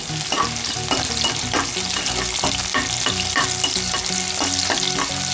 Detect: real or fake real